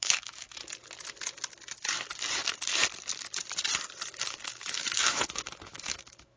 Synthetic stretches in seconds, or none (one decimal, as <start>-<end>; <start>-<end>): 0.0-0.6; 4.2-6.4